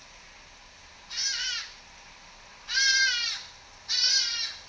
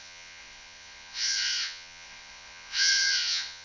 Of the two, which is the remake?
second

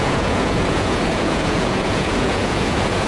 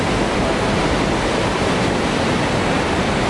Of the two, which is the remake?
first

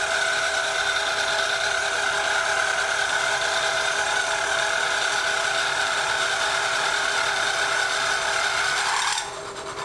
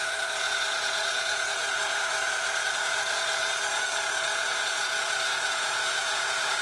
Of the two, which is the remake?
second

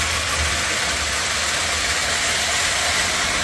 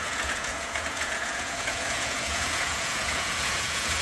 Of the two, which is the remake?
second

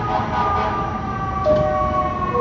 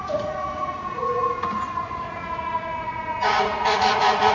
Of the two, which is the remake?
second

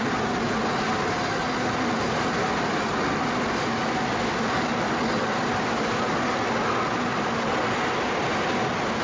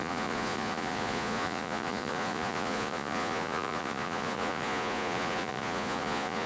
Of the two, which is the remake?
second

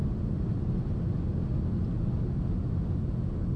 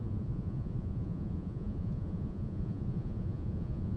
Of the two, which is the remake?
second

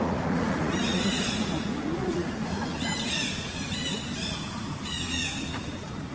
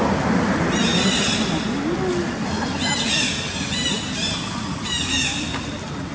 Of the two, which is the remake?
first